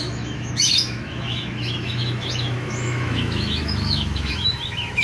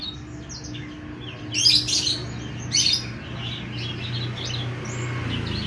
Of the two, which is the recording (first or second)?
second